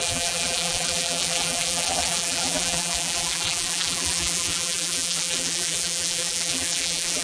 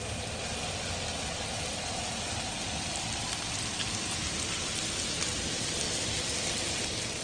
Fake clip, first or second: first